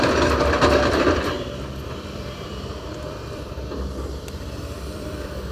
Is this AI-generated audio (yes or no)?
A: yes